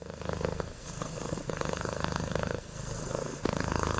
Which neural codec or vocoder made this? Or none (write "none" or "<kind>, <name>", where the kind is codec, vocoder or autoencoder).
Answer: codec, SNAC